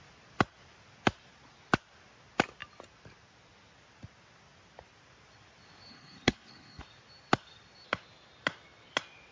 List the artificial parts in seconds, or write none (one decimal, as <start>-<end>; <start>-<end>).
5.9-6.8